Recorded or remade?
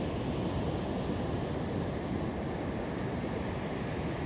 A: recorded